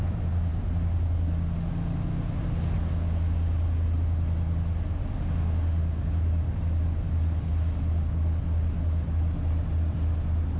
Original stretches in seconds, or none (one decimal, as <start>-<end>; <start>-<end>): 0.0-10.6